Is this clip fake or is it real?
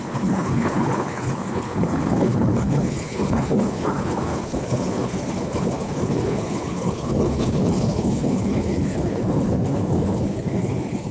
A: fake